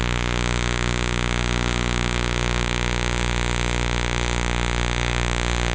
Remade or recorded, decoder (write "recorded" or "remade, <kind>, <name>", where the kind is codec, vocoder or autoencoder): remade, codec, DAC